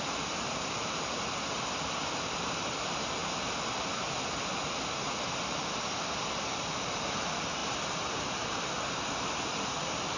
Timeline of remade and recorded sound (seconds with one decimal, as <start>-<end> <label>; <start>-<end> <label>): 0.0-10.2 recorded